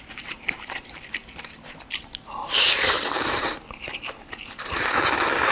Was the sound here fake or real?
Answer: fake